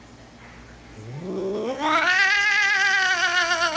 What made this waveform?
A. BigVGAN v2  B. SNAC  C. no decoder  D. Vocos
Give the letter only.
C